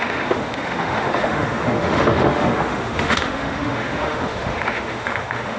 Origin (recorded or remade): remade